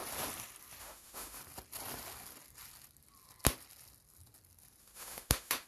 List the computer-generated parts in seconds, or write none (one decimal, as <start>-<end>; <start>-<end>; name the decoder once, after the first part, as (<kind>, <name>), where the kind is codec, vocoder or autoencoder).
0.8-1.4 (autoencoder, DAC-VAE); 4.8-5.7